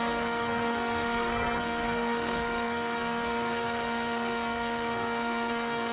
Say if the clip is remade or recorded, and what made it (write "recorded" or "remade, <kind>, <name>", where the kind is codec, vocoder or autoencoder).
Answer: remade, codec, SNAC